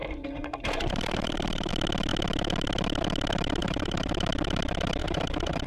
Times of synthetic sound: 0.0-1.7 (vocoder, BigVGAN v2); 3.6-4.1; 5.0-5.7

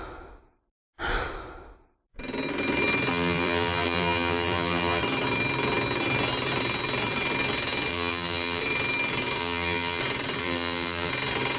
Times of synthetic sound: 3.1-5.0 (vocoder, BigVGAN v2); 7.9-8.6; 9.4-10.0; 10.4-11.1

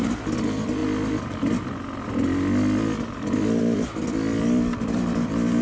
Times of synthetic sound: none

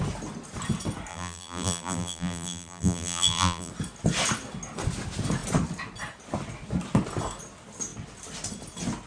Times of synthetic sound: 1.1-3.7 (vocoder, BigVGAN v2)

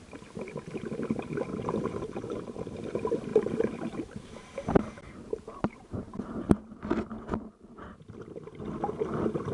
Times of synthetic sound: 1.5-2.8 (vocoder, BigVGAN v2); 3.3-6.7

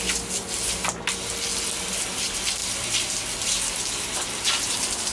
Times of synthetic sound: 2.6-3.6 (vocoder, BigVGAN v2)